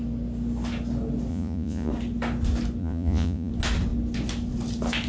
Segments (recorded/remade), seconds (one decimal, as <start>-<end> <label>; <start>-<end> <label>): 0.0-1.3 recorded; 1.3-1.9 remade; 1.9-2.8 recorded; 2.8-3.5 remade; 3.5-5.1 recorded